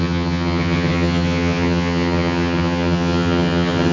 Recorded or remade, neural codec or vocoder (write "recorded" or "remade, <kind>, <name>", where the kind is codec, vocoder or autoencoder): remade, vocoder, HiFi-GAN